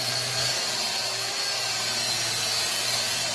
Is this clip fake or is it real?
real